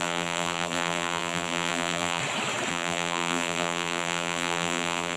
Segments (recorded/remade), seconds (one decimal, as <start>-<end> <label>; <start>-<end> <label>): 0.0-2.2 remade; 2.2-2.7 recorded; 2.7-5.2 remade